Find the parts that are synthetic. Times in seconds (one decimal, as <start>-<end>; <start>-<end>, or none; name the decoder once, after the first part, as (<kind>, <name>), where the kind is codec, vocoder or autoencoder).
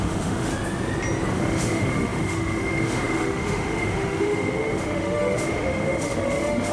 0.0-0.5 (autoencoder, DAC-VAE); 1.3-6.7